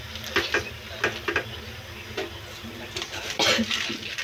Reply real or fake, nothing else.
real